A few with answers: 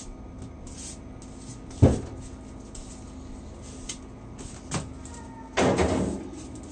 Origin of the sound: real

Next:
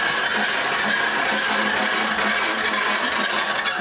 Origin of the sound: real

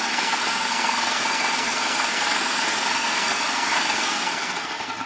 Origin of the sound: fake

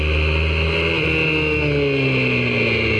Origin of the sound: real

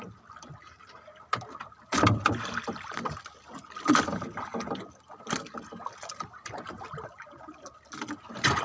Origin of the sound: real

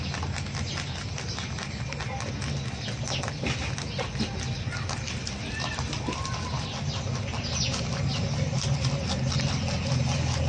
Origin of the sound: real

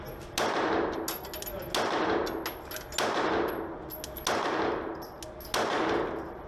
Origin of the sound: real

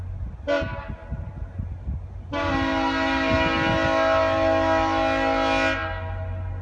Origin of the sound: real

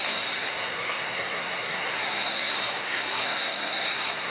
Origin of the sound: fake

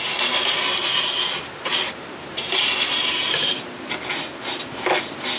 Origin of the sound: real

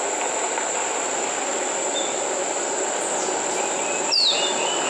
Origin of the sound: real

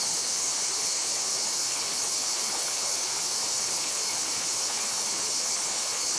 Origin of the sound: fake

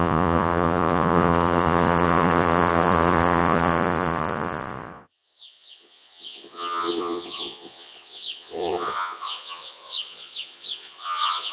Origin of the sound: fake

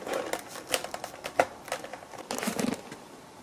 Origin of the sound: real